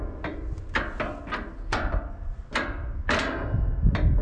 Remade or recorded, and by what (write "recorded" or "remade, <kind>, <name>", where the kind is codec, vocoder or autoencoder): recorded